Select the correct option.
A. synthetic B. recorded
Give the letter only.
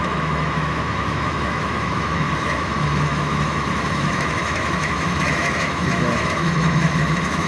A